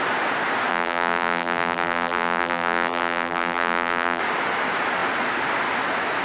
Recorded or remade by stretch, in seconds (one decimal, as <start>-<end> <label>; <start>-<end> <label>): 0.0-0.7 recorded; 0.7-4.2 remade; 4.2-6.2 recorded